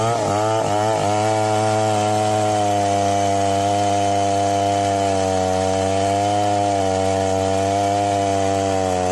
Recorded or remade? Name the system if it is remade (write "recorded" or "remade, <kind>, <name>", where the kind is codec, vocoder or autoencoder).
recorded